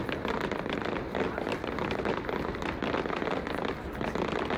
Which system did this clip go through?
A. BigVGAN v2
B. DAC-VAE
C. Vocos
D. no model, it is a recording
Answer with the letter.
D